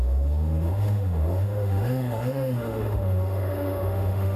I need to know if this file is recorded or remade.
remade